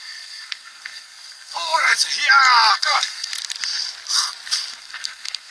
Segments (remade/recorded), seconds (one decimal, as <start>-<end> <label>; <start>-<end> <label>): 0.0-1.9 remade; 1.9-2.7 recorded; 2.7-3.3 remade; 3.3-4.8 recorded; 4.8-5.5 remade